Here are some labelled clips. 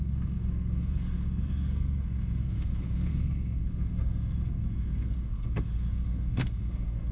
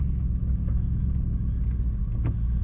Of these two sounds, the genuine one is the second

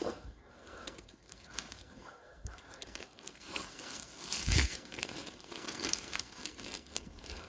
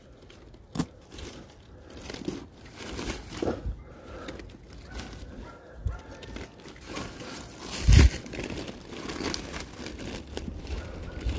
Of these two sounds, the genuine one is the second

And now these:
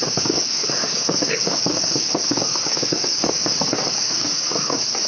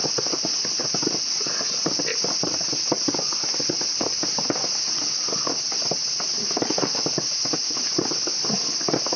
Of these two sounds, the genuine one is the second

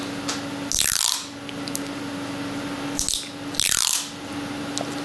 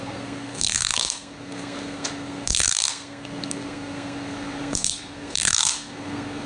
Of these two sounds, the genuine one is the first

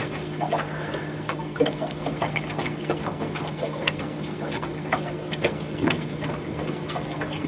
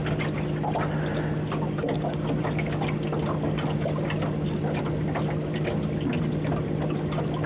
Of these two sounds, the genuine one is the second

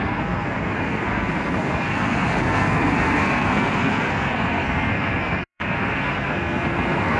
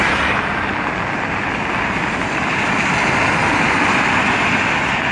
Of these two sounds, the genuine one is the second